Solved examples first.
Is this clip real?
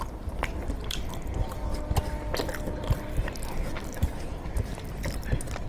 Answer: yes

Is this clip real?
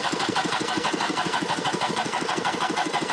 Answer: no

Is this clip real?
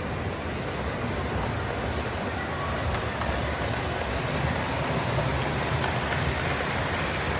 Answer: yes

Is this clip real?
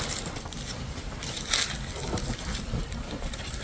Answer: no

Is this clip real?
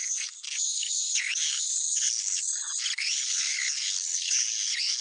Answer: no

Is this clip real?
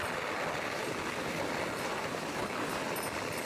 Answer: yes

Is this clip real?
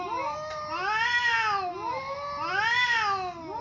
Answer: yes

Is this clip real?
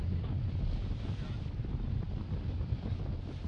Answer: yes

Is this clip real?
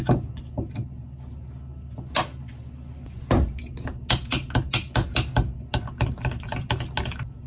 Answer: yes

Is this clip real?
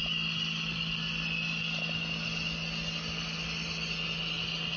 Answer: yes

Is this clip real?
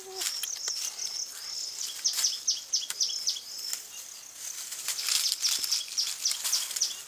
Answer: yes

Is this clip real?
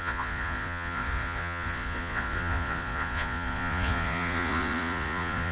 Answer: no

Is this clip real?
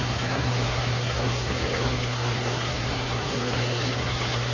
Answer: no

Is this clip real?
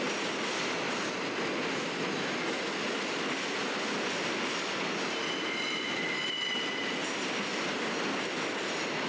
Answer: yes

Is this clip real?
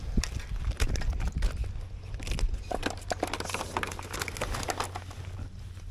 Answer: yes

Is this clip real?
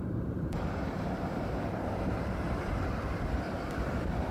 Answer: no